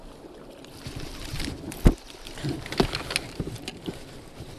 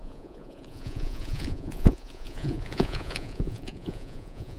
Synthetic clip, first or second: second